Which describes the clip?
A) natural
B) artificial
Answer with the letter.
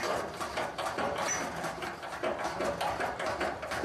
A